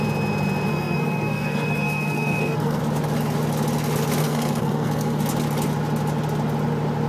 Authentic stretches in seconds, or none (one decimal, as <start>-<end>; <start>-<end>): 0.0-0.7; 2.8-4.2; 5.2-7.1